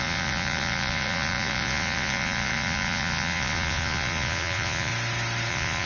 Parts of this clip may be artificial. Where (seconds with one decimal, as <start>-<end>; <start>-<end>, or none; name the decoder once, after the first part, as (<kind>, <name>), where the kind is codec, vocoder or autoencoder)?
0.0-4.9 (vocoder, Vocos); 5.5-5.9